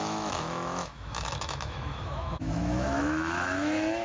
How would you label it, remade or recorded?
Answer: remade